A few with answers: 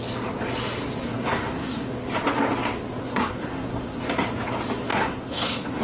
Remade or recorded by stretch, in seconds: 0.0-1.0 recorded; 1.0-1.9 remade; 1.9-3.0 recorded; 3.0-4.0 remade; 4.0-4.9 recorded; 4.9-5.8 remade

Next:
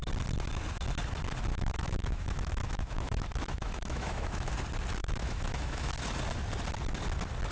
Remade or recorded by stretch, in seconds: 0.0-1.5 recorded; 1.5-4.5 remade; 4.5-5.0 recorded; 5.0-5.9 remade; 5.9-7.5 recorded

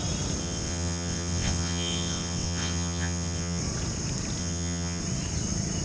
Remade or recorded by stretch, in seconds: 0.0-0.4 recorded; 0.4-3.6 remade; 3.6-4.4 recorded; 4.4-5.0 remade; 5.0-5.8 recorded

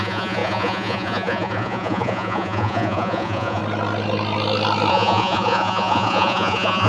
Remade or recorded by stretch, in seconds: 0.0-3.6 remade; 3.6-4.9 recorded; 4.9-6.9 remade

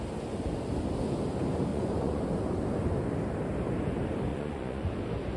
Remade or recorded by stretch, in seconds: 0.0-1.7 recorded; 1.7-2.2 remade; 2.2-4.3 recorded; 4.3-4.9 remade; 4.9-5.4 recorded